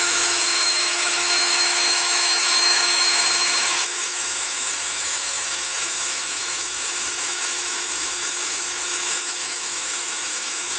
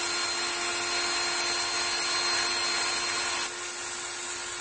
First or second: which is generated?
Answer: first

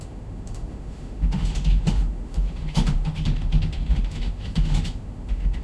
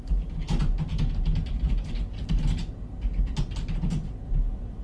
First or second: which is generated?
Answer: first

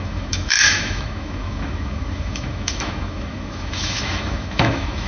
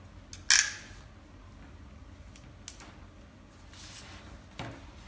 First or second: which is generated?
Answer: first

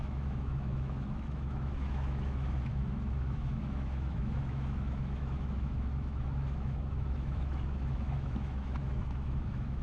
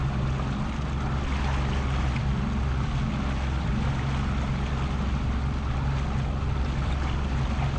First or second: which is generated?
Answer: first